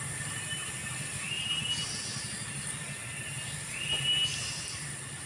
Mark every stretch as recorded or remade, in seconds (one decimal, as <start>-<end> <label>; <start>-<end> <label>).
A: 0.0-5.3 recorded